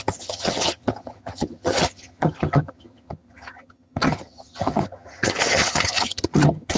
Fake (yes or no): yes